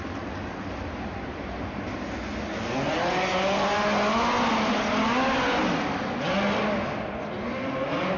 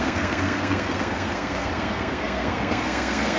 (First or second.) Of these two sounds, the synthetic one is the second